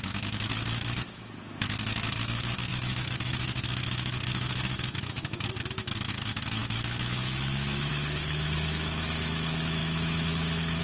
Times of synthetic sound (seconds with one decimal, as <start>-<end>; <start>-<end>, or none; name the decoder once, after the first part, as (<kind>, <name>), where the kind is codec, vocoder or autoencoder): 0.0-10.8 (autoencoder, DAC-VAE)